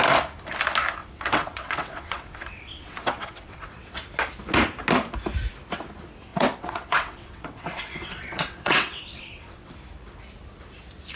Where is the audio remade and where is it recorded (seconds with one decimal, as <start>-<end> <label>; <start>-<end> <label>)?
0.0-1.0 recorded; 1.0-4.0 remade; 4.0-6.3 recorded; 6.3-9.7 remade; 9.7-11.2 recorded

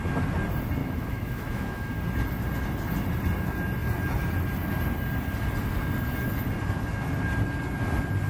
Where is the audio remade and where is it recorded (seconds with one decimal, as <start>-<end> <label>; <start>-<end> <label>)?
0.0-0.8 recorded; 0.8-2.0 remade; 2.0-8.3 recorded

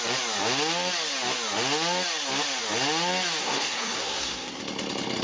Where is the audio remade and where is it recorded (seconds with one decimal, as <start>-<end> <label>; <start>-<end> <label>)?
0.0-3.4 recorded; 3.4-4.6 remade; 4.6-5.2 recorded

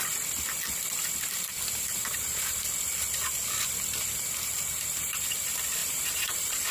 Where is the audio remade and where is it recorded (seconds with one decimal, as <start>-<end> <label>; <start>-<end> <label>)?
0.0-5.8 recorded; 5.8-6.7 remade

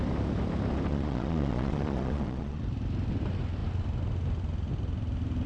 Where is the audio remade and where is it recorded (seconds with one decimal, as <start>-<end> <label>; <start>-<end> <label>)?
0.0-0.9 recorded; 0.9-2.6 remade; 2.6-5.5 recorded

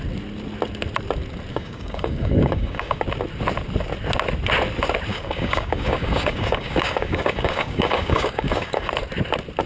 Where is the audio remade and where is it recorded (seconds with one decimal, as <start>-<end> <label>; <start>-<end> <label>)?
0.0-1.5 recorded; 1.5-3.0 remade; 3.0-5.1 recorded; 5.1-8.9 remade; 8.9-9.7 recorded

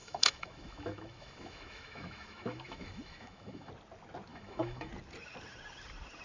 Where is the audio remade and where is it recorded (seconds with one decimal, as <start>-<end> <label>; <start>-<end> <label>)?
0.0-3.7 remade; 3.7-4.3 recorded; 4.3-4.9 remade; 4.9-6.2 recorded

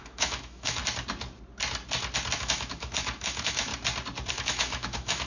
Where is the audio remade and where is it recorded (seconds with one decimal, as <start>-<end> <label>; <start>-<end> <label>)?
0.0-0.8 remade; 0.8-2.4 recorded; 2.4-3.7 remade; 3.7-4.3 recorded; 4.3-5.3 remade